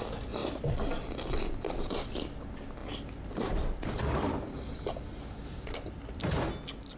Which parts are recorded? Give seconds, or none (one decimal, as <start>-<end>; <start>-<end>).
0.0-2.8; 6.3-7.0